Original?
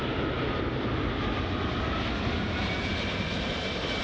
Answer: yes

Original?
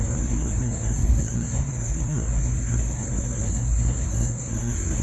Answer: no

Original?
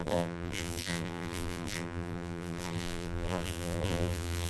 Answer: no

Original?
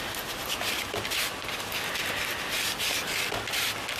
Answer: yes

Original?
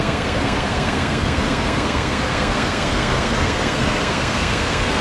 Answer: no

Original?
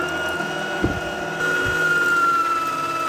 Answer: yes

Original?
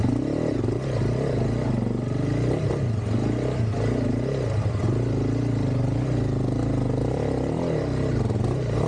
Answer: yes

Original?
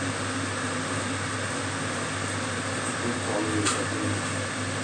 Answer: yes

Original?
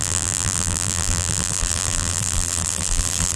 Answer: no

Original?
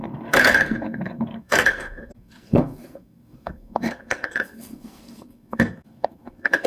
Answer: no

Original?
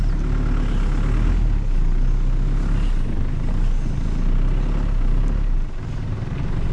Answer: yes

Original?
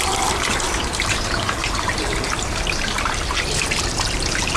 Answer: no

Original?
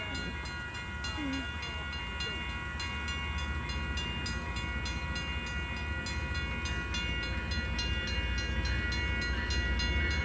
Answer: yes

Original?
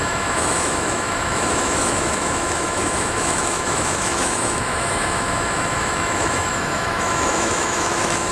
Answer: no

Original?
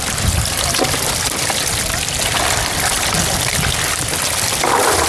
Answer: yes